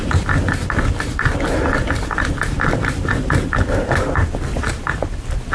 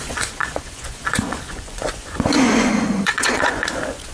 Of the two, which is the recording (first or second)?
first